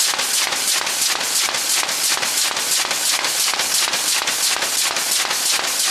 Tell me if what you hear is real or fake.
real